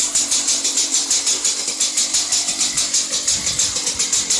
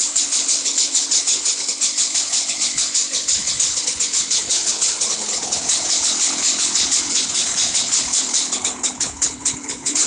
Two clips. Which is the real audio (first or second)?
first